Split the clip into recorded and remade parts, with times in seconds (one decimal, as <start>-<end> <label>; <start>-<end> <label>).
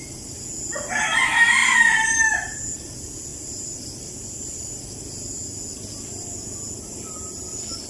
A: 0.0-1.6 recorded; 1.6-2.6 remade; 2.6-3.3 recorded; 3.3-5.0 remade; 5.0-7.9 recorded